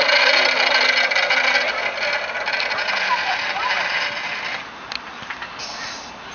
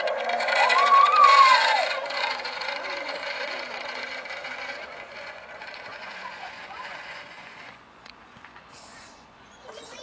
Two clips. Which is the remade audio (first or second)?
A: second